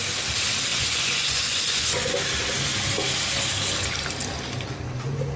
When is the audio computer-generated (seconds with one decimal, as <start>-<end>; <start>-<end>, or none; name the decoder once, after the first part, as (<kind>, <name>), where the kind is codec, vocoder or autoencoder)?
0.7-2.1 (vocoder, Vocos)